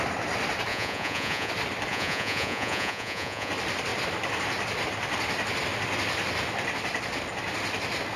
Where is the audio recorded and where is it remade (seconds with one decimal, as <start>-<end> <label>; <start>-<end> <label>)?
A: 0.0-0.7 recorded; 0.7-1.5 remade; 1.5-1.9 recorded; 1.9-3.5 remade; 3.5-8.2 recorded